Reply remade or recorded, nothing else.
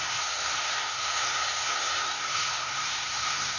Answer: remade